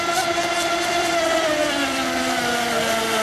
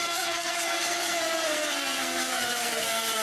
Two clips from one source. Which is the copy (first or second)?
second